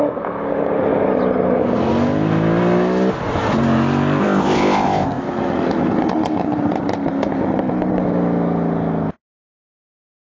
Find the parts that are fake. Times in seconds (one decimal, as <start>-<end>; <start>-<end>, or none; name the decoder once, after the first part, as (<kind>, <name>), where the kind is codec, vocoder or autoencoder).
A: 4.2-5.2 (codec, ZipCodec)